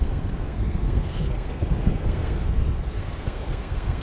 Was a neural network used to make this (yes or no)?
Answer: yes